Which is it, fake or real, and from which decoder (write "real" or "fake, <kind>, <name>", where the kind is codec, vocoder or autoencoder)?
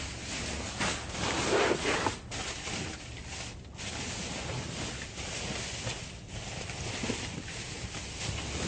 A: real